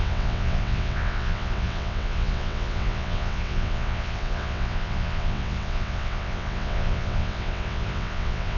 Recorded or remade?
remade